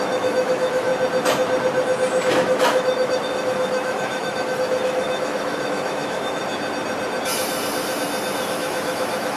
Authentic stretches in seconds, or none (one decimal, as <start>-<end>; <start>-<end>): 0.9-2.3; 6.4-8.5